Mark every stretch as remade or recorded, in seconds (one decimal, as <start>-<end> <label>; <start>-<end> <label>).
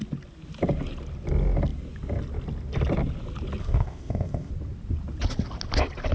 0.0-3.6 recorded; 3.6-4.5 remade; 4.5-6.1 recorded